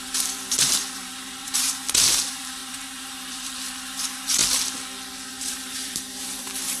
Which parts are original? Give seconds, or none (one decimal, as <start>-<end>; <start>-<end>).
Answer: 4.4-5.3